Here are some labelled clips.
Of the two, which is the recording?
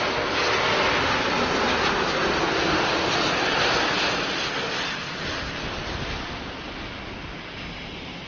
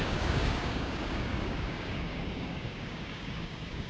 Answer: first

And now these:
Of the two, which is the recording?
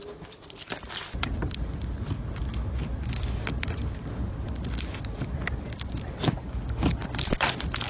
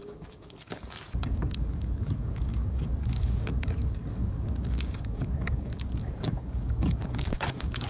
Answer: first